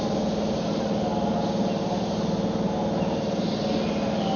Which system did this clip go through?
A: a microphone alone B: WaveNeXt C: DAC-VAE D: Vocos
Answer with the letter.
A